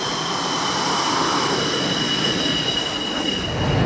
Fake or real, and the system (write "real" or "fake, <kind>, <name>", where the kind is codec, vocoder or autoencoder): real